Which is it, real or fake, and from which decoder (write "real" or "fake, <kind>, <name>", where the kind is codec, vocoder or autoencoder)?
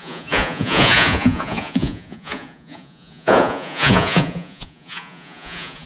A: fake, vocoder, Vocos